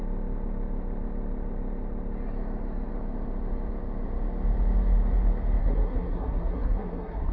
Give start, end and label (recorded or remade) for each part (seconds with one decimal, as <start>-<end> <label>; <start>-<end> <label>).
0.0-5.6 recorded; 5.6-7.3 remade